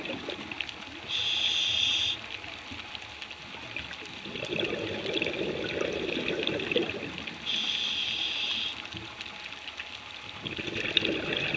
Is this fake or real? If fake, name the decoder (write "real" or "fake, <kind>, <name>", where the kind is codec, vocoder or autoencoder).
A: real